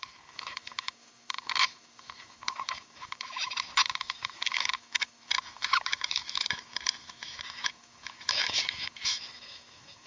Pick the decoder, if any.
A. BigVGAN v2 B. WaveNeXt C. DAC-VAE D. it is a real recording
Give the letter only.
C